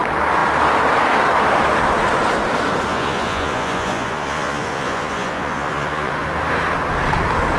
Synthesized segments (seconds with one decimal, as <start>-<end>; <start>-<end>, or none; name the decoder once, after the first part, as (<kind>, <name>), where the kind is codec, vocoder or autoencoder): 2.9-6.1 (vocoder, Vocos)